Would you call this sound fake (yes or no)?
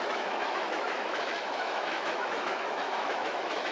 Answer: yes